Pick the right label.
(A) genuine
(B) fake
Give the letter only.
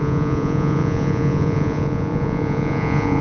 B